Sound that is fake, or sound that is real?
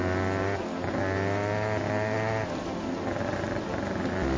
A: real